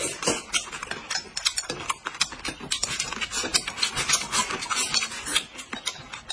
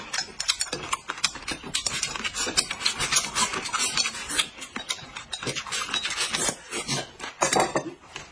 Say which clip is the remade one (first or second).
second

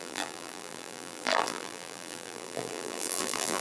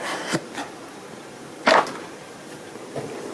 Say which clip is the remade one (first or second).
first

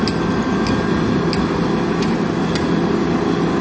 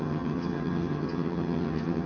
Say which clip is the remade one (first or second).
second